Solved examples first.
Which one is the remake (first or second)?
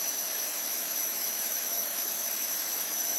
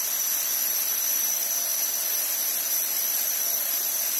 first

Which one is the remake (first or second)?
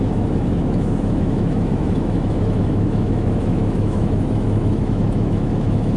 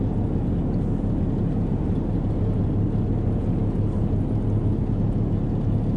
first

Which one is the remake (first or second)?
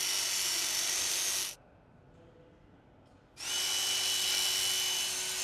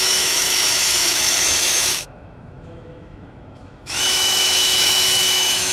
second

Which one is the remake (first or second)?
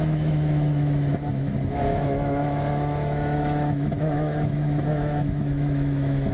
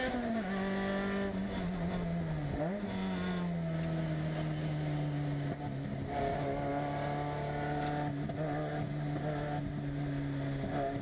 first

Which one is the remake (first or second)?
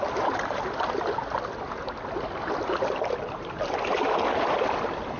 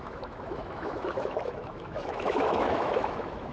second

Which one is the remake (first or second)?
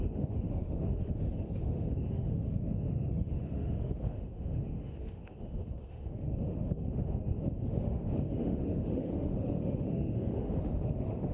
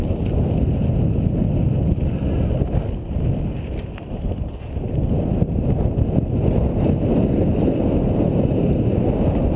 first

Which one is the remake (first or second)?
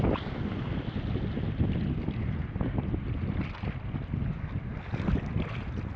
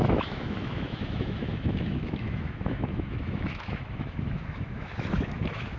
second